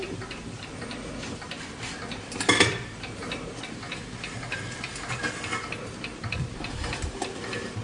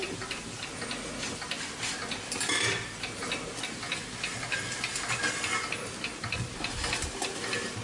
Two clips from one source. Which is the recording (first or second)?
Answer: second